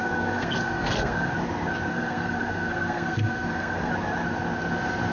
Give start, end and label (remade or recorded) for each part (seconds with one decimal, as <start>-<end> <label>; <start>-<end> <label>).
0.0-1.3 remade; 1.3-1.9 recorded; 1.9-3.9 remade; 3.9-5.1 recorded